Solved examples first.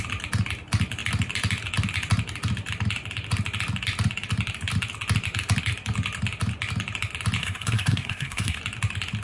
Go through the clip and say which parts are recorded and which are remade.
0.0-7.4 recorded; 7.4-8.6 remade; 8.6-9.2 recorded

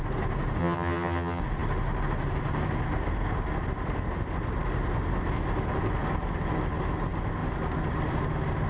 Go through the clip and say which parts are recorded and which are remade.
0.0-0.6 recorded; 0.6-1.4 remade; 1.4-8.7 recorded

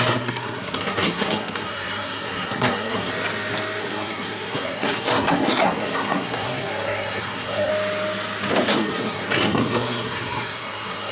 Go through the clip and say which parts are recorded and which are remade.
0.0-3.1 remade; 3.1-3.8 recorded; 3.8-7.7 remade; 7.7-8.7 recorded; 8.7-11.1 remade